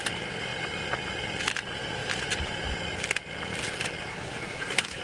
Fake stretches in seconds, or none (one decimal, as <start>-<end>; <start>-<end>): 4.1-5.0